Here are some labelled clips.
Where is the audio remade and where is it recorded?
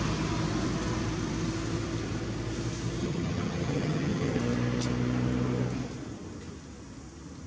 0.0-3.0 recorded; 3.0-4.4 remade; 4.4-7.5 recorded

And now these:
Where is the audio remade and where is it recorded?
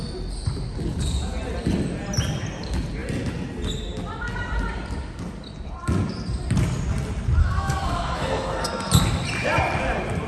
0.0-7.4 recorded; 7.4-8.9 remade; 8.9-10.3 recorded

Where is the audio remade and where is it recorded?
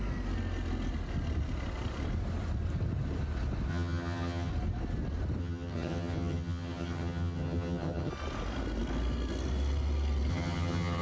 0.0-3.7 recorded; 3.7-4.5 remade; 4.5-5.4 recorded; 5.4-8.1 remade; 8.1-10.3 recorded; 10.3-11.0 remade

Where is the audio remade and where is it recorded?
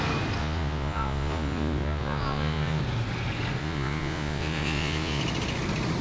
0.0-0.4 recorded; 0.4-2.8 remade; 2.8-3.6 recorded; 3.6-5.2 remade; 5.2-6.0 recorded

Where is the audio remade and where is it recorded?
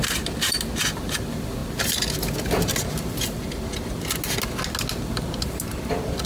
0.0-6.3 recorded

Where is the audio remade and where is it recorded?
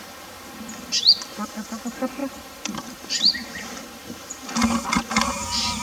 0.0-2.2 recorded; 2.2-4.5 remade; 4.5-5.8 recorded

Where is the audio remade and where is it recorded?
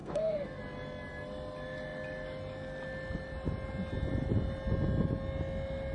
0.0-0.6 remade; 0.6-5.9 recorded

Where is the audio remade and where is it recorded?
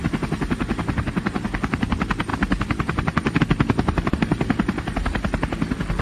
0.0-6.0 recorded